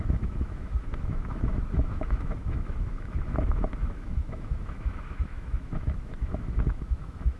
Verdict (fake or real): fake